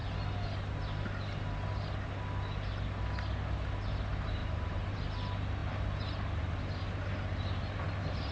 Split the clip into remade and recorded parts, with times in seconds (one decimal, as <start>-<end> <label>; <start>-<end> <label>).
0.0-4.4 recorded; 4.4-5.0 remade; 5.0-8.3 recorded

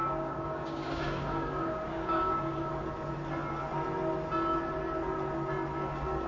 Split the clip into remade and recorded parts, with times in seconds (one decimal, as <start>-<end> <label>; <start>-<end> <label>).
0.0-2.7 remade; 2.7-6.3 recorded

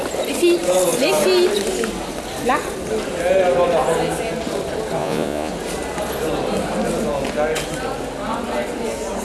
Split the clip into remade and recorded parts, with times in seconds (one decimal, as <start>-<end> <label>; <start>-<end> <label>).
0.0-5.0 recorded; 5.0-5.5 remade; 5.5-9.2 recorded

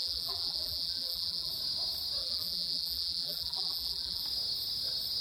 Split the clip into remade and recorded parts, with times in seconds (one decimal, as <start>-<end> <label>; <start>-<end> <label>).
0.0-1.5 remade; 1.5-2.2 recorded; 2.2-4.2 remade; 4.2-5.2 recorded

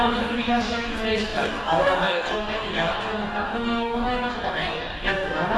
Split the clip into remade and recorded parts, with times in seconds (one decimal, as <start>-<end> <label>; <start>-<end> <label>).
0.0-5.6 remade

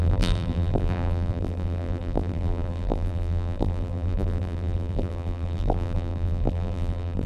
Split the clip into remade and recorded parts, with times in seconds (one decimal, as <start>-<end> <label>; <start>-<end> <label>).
0.0-7.3 remade

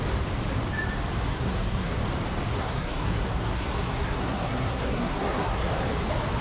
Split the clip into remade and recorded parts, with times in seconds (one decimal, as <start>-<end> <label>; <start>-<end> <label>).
0.0-1.3 recorded; 1.3-2.0 remade; 2.0-2.5 recorded; 2.5-5.7 remade; 5.7-6.4 recorded